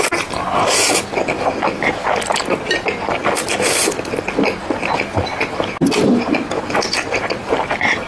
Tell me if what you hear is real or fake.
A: real